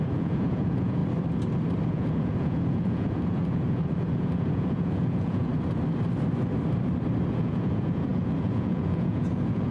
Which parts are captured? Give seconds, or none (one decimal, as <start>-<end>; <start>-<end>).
1.0-1.9; 5.5-7.3